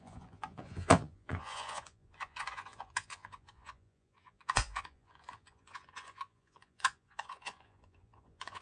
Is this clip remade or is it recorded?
remade